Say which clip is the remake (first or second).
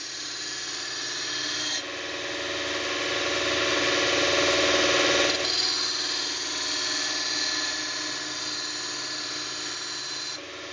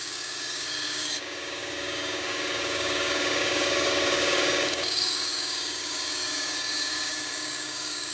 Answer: second